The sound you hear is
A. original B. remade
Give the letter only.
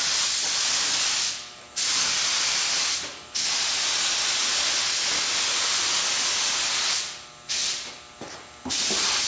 A